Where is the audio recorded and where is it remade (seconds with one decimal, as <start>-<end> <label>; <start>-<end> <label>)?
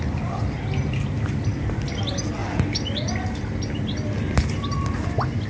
0.0-5.5 recorded